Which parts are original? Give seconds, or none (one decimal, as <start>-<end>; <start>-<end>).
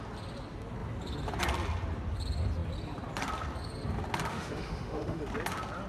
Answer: 0.0-4.3; 5.2-5.9